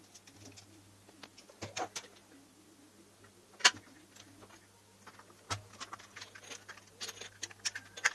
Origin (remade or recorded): recorded